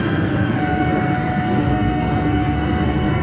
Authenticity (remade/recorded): remade